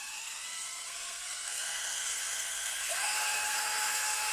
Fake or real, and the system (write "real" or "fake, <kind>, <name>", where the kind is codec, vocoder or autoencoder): fake, codec, SNAC